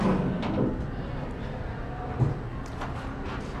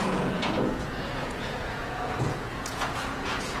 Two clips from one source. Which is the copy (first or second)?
second